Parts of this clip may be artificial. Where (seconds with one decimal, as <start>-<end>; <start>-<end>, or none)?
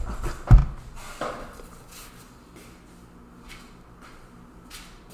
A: none